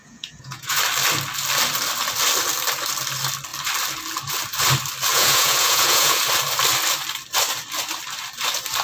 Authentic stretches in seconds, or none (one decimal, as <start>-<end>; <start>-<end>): 0.8-5.1; 6.2-8.8